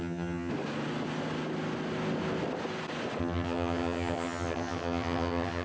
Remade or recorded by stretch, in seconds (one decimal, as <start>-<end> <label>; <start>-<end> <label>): 0.0-0.5 remade; 0.5-3.2 recorded; 3.2-5.6 remade